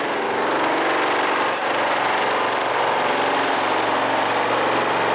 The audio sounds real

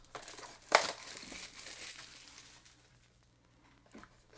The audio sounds real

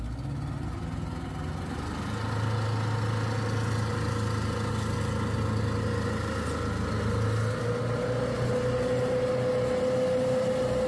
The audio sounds real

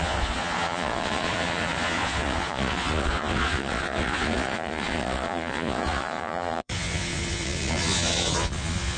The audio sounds fake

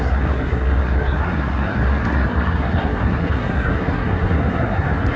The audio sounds fake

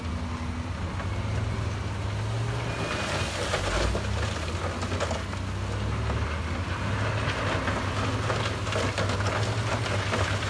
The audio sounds real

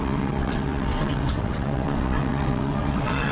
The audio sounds fake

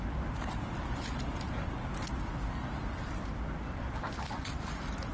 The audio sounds real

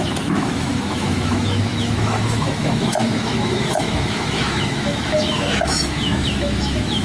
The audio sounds fake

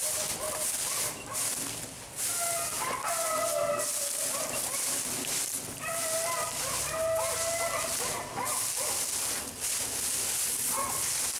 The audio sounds real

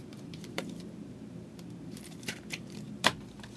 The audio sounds fake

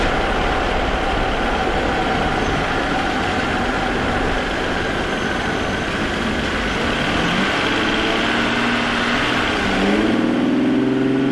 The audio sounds real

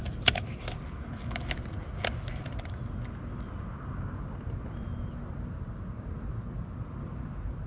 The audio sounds real